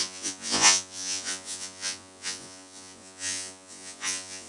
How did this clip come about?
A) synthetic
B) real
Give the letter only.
A